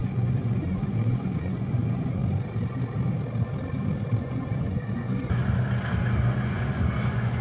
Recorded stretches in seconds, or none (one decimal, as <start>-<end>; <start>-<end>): 2.2-4.2; 5.4-6.2